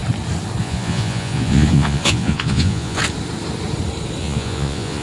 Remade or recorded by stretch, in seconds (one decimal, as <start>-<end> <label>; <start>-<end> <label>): 0.0-0.6 recorded; 0.6-3.0 remade; 3.0-4.2 recorded; 4.2-5.0 remade

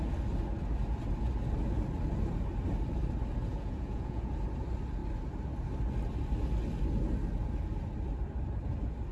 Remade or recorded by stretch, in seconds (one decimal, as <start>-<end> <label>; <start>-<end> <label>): 0.0-3.5 recorded; 3.5-4.3 remade; 4.3-9.1 recorded

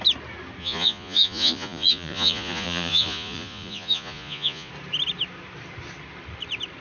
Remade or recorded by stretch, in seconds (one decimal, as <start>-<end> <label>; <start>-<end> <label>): 0.0-0.6 recorded; 0.6-4.7 remade; 4.7-6.8 recorded

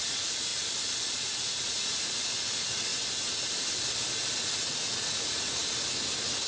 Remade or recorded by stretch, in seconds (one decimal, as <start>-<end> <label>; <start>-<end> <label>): 0.0-0.5 remade; 0.5-1.2 recorded; 1.2-2.9 remade; 2.9-4.4 recorded; 4.4-5.6 remade; 5.6-6.5 recorded

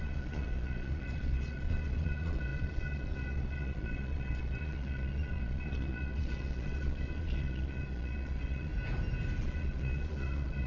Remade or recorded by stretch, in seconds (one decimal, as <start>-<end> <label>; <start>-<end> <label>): 0.0-8.7 remade; 8.7-9.4 recorded; 9.4-10.7 remade